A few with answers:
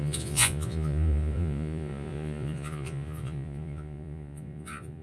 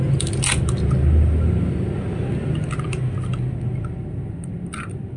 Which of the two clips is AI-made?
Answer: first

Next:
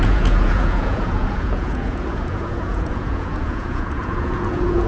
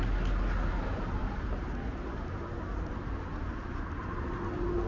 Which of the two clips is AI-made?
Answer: first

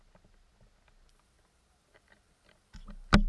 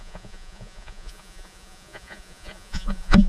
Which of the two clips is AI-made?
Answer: second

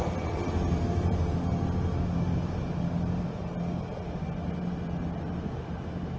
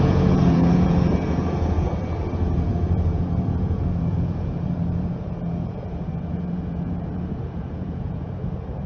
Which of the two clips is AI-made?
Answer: second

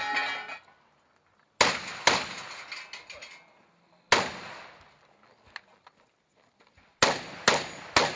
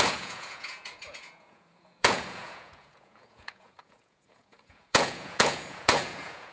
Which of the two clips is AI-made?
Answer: second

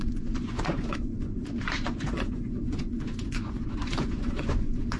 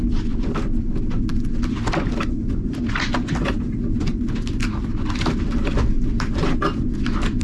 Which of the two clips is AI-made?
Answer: first